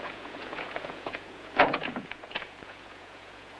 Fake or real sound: fake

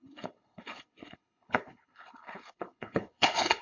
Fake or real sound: fake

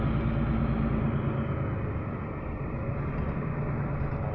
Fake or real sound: real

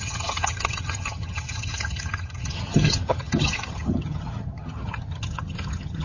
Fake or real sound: fake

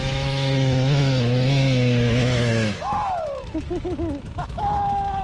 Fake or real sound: fake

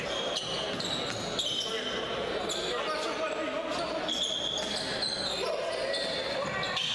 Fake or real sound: real